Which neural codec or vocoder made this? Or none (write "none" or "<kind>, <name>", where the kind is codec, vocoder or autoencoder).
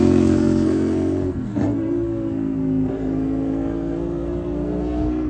codec, SNAC